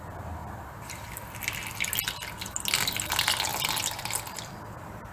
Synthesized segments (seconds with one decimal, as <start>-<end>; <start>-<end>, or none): 0.4-1.3